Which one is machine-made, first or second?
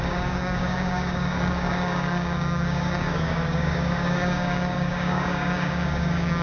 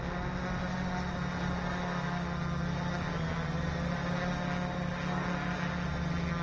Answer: first